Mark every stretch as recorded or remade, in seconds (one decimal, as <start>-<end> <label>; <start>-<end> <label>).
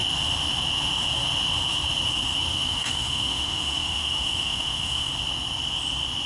0.0-2.5 recorded; 2.5-5.1 remade; 5.1-6.3 recorded